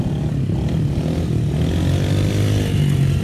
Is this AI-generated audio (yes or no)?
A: no